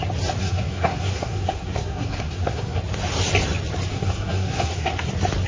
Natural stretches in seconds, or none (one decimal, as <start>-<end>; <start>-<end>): 0.0-0.4; 2.8-3.9; 5.1-5.5